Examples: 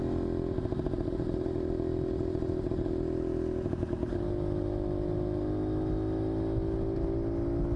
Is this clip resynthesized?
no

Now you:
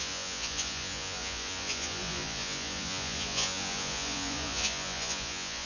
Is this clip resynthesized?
yes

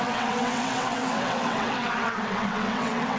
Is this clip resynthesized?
yes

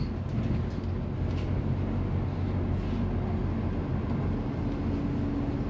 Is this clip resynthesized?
no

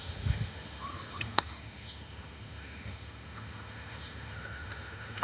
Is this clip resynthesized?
yes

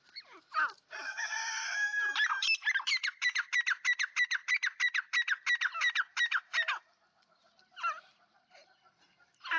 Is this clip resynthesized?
yes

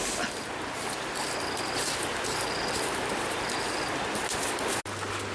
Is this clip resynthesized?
no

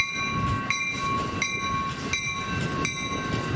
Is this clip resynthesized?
no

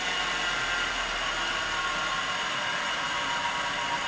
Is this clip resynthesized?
no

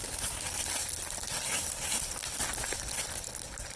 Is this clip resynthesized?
no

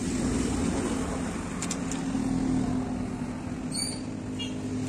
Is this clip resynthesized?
no